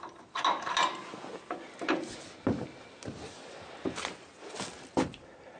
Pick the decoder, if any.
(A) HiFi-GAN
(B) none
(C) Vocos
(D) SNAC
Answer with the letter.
B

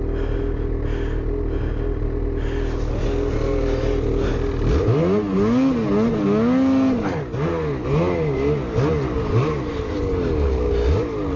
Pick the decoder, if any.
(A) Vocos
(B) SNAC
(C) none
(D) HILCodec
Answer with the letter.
C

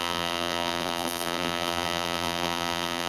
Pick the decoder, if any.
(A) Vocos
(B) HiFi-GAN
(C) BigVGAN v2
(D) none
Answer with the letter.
C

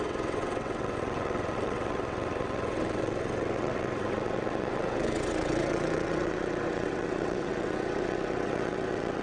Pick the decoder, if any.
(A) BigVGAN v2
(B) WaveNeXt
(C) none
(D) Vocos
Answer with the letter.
B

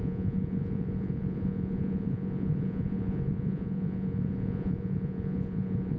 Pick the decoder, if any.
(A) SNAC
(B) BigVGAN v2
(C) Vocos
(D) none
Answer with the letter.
C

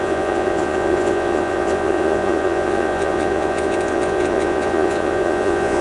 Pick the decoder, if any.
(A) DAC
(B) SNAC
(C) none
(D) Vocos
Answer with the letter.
D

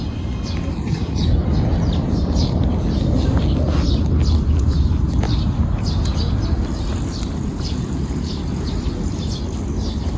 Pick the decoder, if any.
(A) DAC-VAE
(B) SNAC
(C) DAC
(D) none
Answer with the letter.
D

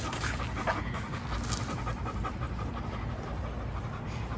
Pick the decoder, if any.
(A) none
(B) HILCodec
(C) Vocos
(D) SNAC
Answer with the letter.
A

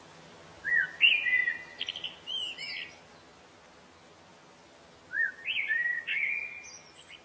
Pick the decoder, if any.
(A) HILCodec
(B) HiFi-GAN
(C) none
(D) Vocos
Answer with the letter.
C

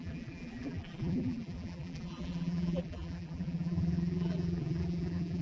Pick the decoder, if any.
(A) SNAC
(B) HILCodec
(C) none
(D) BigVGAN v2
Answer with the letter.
D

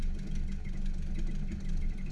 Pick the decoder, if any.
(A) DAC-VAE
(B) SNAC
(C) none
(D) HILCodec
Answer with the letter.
C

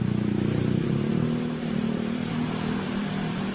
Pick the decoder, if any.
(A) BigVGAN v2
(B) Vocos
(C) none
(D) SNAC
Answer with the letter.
A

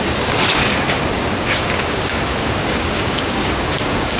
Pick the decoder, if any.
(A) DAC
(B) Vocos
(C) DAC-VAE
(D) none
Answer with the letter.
A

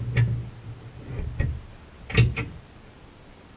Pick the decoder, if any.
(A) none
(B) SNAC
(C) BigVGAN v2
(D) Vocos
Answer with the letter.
A